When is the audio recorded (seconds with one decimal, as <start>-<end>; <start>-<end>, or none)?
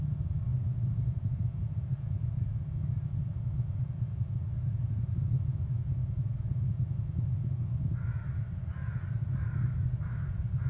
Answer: 0.0-0.5; 1.4-6.0; 6.5-10.7